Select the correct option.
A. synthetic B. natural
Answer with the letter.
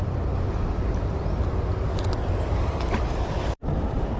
B